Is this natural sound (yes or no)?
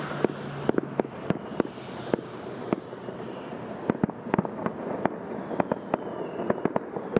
yes